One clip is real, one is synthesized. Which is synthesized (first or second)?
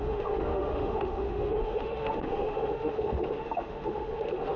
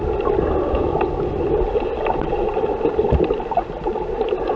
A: first